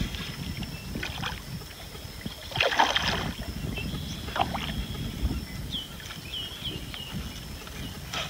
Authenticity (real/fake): real